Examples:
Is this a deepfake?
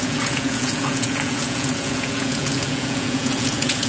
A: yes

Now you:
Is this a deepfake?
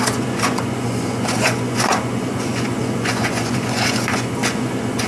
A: yes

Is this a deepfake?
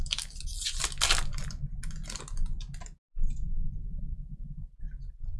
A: no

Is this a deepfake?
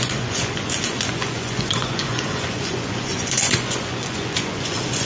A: yes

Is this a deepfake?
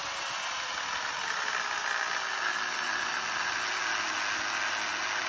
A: no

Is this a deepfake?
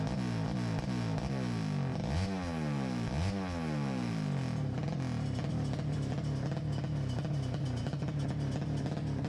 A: no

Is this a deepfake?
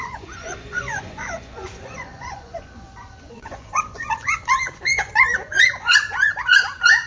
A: yes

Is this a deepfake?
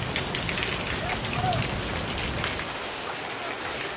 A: no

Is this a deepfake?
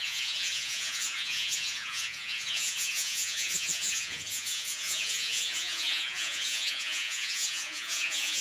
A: yes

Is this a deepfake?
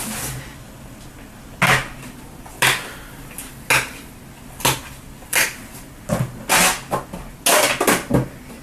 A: no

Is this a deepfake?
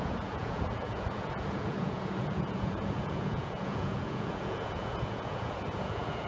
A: yes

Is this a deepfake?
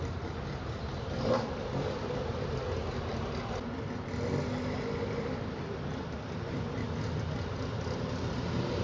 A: no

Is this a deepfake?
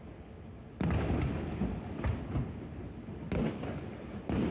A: no